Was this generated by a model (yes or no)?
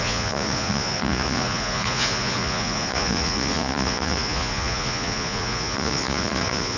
yes